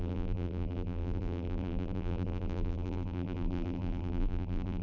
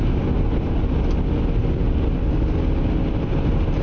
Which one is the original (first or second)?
second